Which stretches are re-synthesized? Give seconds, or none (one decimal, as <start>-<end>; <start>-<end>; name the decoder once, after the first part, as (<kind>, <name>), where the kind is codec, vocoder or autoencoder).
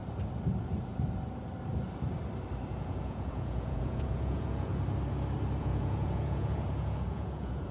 2.7-4.7 (vocoder, Vocos); 5.6-7.7